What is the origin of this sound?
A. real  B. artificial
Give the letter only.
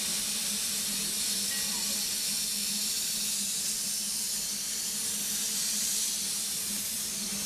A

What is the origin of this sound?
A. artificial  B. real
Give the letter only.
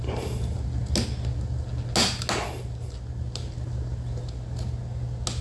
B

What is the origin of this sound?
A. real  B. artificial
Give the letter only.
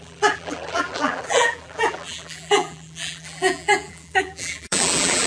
B